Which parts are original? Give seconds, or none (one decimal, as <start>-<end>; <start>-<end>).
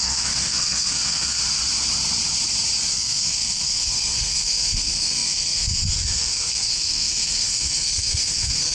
1.4-2.9